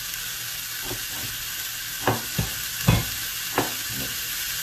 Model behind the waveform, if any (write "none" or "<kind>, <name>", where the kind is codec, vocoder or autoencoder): none